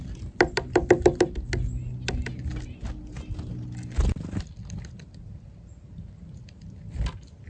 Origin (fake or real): real